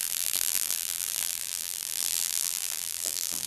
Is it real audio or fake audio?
fake